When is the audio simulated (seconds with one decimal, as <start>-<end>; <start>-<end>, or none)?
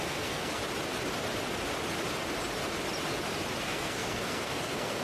0.0-0.6; 3.6-5.0